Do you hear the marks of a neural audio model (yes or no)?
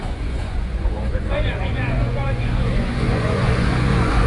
yes